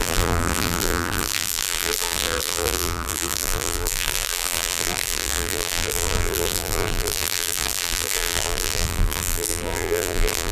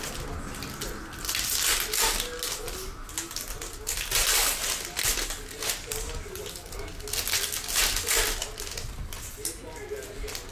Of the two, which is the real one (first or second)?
second